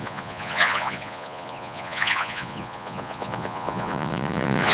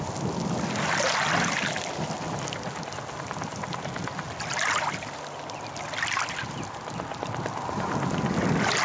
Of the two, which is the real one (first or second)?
second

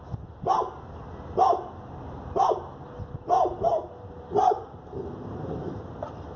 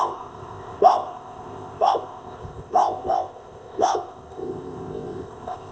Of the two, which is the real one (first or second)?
first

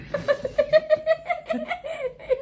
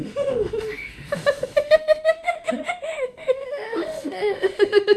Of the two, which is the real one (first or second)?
first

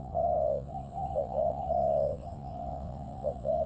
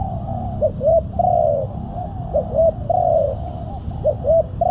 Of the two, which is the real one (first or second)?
second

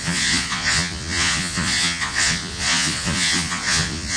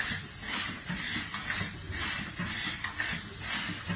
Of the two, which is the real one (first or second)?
second